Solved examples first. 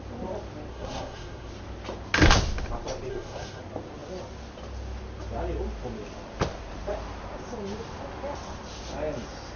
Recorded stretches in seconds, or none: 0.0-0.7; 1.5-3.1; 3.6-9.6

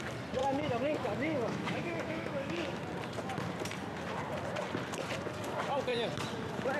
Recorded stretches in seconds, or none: 0.0-0.4; 2.8-6.8

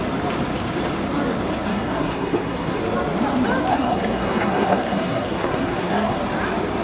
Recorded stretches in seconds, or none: 0.0-1.7; 2.8-3.7; 6.2-6.8

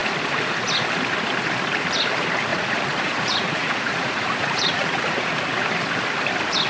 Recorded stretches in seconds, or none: 0.0-2.5; 5.4-6.7

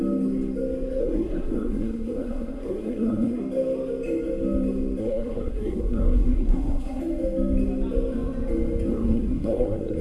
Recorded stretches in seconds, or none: 0.0-1.0; 3.4-5.0; 7.0-8.9

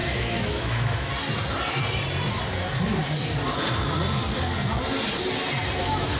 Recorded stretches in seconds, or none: 1.1-2.6; 3.0-5.8

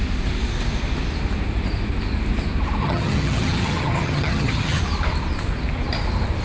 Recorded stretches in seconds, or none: 0.0-2.8; 4.8-6.4